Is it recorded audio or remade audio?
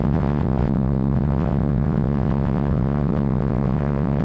remade